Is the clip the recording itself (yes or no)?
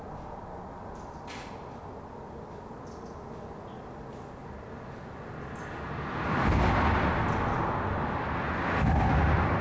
yes